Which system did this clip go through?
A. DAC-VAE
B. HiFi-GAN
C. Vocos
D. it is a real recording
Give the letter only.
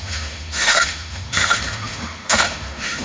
A